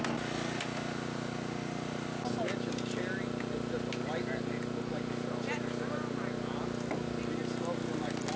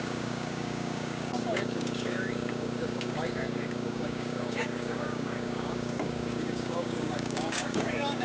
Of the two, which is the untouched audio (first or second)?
first